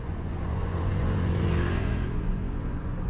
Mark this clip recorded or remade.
remade